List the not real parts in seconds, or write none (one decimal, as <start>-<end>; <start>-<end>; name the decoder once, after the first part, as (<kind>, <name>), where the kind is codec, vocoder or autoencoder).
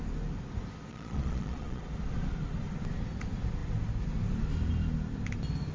0.9-1.8 (vocoder, Vocos)